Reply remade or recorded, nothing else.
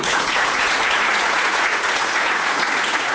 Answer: remade